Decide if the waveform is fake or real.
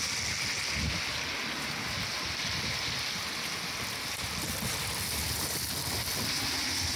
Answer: real